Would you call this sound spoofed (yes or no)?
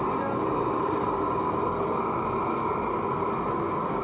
no